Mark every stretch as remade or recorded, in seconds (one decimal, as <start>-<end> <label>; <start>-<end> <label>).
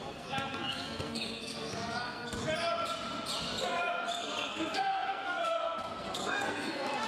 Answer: 0.0-2.4 remade; 2.4-4.1 recorded; 4.1-7.1 remade